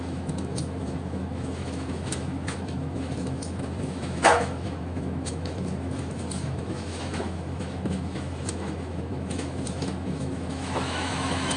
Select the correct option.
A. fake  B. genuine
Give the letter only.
A